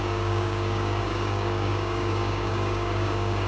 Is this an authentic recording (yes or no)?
no